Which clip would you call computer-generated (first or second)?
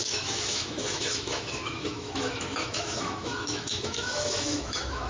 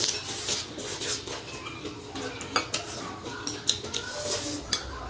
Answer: first